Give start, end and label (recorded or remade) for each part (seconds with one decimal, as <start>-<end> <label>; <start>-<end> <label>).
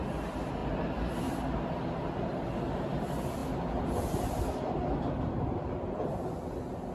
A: 0.0-6.9 recorded